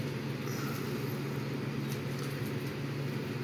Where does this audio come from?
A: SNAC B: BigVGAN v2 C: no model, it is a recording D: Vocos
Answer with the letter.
C